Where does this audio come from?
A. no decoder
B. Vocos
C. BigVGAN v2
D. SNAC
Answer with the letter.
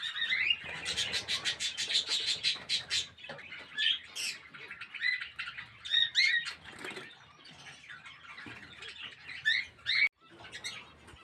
A